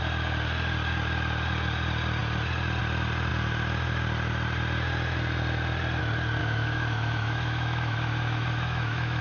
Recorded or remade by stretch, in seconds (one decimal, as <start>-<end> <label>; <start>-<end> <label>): 0.0-6.4 recorded; 6.4-9.2 remade

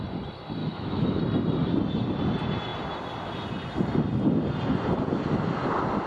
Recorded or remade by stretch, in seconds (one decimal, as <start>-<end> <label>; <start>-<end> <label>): 0.0-0.6 recorded; 0.6-1.2 remade; 1.2-6.1 recorded